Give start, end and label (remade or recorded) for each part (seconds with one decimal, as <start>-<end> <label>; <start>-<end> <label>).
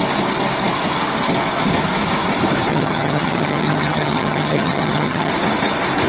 0.0-2.7 recorded; 2.7-5.3 remade; 5.3-6.1 recorded